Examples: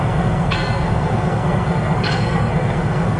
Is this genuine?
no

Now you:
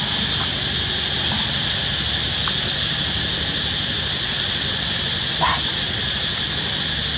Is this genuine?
yes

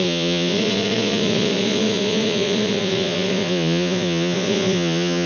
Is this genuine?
no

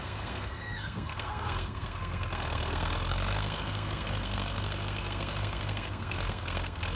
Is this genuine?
no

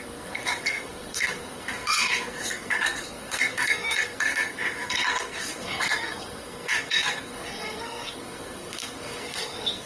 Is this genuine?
no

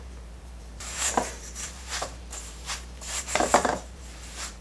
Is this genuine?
no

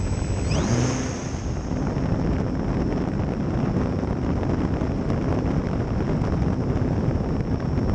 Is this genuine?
yes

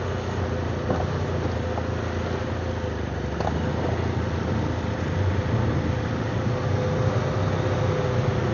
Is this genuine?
yes